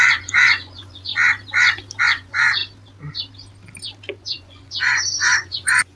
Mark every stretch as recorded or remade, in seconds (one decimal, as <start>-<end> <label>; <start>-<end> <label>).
0.0-1.1 remade; 1.1-2.0 recorded; 2.0-2.6 remade; 2.6-4.2 recorded; 4.2-6.0 remade